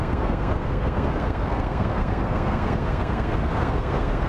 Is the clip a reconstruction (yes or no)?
yes